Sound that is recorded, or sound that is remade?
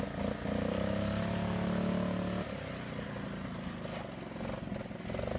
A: recorded